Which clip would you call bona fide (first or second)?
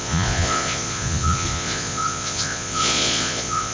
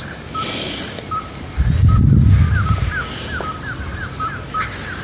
second